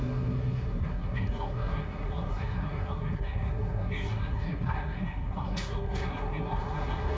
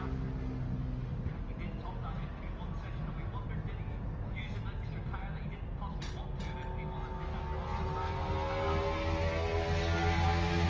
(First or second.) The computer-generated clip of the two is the first